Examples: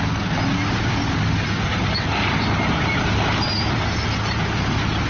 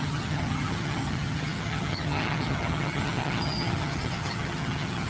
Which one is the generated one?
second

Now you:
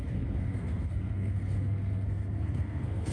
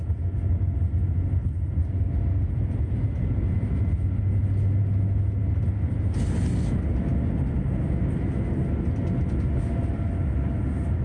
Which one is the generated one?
first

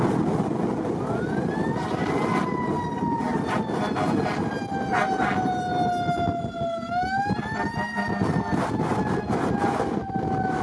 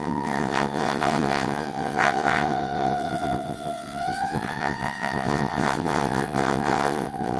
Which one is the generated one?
second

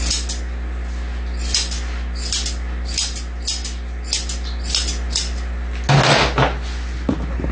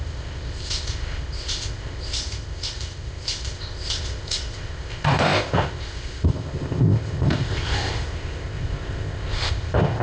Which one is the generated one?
second